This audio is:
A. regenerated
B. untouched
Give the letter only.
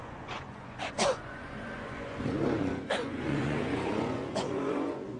A